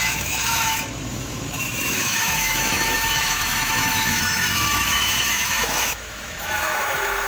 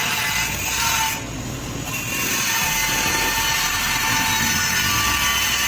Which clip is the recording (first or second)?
second